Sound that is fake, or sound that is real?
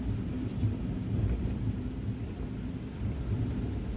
real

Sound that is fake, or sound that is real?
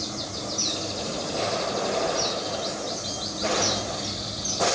fake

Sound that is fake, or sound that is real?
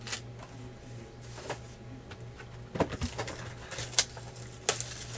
real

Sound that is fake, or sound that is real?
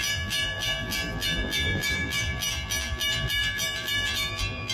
fake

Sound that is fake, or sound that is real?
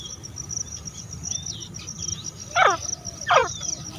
fake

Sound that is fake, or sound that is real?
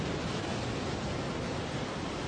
real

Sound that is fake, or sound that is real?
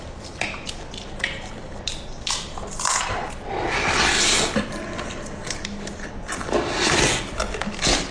real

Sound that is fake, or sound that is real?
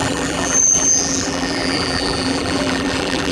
fake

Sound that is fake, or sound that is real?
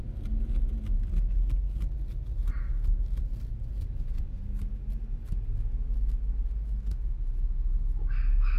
real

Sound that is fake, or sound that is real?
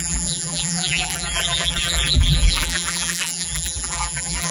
fake